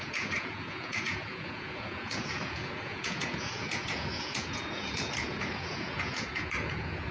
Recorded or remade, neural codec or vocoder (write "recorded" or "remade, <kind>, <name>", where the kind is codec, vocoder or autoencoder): remade, vocoder, Vocos